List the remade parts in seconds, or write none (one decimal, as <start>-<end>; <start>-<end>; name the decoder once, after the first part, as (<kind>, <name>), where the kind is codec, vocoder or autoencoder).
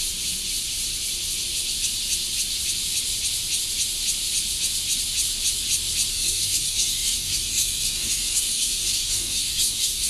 6.1-10.1 (codec, DAC)